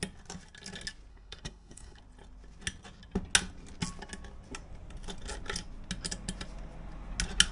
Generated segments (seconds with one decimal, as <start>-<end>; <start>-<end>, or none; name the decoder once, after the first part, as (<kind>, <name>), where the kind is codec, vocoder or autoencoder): 1.1-2.0 (codec, SNAC)